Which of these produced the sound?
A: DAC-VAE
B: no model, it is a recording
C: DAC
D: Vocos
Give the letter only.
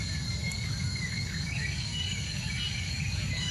C